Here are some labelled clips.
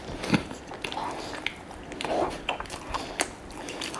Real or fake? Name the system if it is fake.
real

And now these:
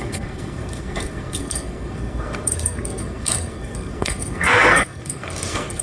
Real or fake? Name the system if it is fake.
fake, codec, SNAC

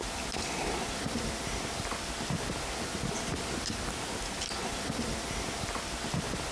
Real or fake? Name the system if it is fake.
real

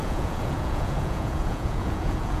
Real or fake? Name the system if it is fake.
fake, vocoder, Vocos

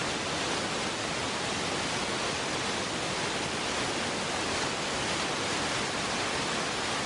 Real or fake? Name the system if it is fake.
real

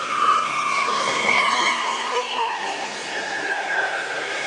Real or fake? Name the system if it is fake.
fake, codec, SNAC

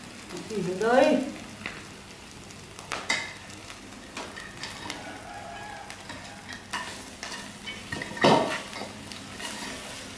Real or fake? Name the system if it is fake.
real